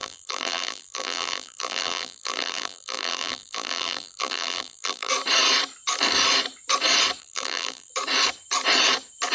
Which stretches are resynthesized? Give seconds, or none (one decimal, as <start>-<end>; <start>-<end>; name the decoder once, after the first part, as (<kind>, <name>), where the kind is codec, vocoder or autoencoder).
0.0-5.1 (vocoder, BigVGAN v2); 7.2-7.9

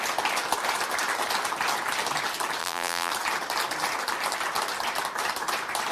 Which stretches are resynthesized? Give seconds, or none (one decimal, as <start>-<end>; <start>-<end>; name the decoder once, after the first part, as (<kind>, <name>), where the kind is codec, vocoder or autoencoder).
2.6-3.1 (vocoder, BigVGAN v2)

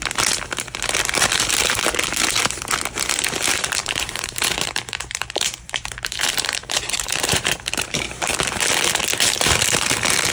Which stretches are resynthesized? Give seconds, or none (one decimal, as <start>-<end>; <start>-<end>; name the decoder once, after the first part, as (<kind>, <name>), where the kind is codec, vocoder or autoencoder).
3.8-8.3 (vocoder, BigVGAN v2)

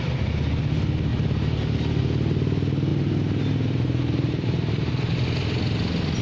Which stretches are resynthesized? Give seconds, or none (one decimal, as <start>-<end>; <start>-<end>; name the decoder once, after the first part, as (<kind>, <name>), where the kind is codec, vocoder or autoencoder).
1.1-2.0 (vocoder, BigVGAN v2); 2.9-4.9

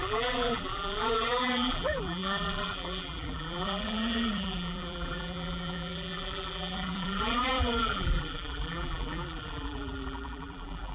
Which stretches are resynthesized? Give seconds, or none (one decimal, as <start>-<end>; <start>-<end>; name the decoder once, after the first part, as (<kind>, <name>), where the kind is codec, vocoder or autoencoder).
0.0-10.9 (vocoder, BigVGAN v2)